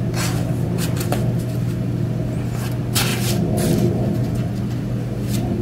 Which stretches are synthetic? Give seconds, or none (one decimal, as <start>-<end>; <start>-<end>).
none